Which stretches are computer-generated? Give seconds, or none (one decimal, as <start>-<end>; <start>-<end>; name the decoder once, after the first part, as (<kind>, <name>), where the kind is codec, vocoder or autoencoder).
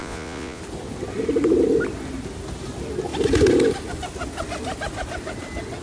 0.0-0.6 (vocoder, Vocos)